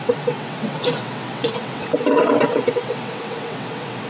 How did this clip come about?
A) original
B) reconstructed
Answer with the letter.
B